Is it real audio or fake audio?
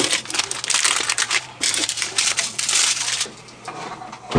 real